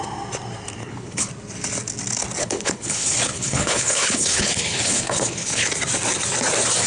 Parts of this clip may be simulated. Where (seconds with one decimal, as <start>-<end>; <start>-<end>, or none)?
0.8-1.3; 2.4-5.7